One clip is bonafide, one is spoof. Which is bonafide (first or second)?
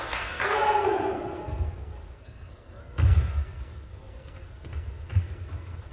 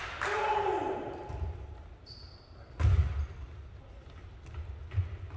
second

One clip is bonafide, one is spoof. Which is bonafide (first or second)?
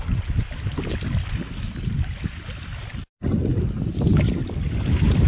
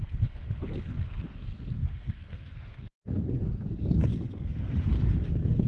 first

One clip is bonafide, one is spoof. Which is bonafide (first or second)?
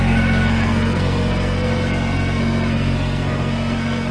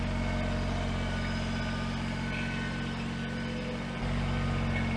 second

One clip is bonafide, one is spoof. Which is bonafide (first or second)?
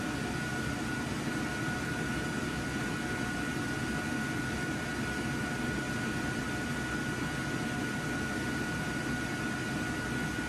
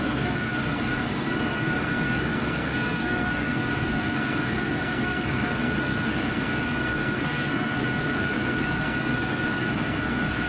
first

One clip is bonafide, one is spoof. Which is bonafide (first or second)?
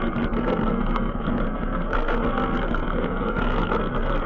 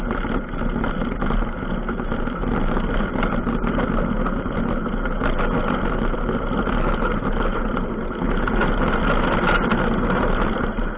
second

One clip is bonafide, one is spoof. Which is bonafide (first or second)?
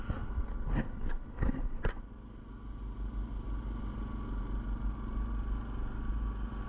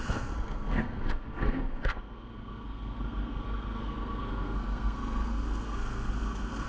first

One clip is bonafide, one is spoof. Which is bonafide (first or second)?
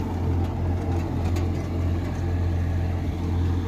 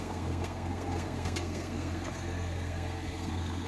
first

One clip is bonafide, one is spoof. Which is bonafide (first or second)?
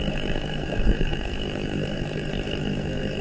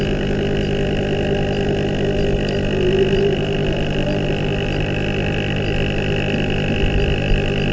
second